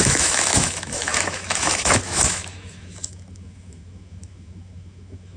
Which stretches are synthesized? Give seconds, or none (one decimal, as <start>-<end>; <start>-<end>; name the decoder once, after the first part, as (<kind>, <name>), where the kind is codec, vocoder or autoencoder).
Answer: 0.0-5.4 (autoencoder, DAC-VAE)